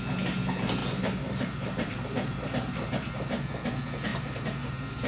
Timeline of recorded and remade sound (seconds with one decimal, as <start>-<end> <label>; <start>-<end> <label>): 0.0-0.8 recorded; 0.8-3.5 remade; 3.5-4.1 recorded; 4.1-5.1 remade